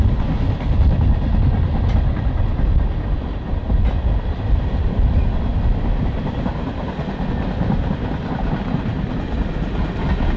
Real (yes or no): yes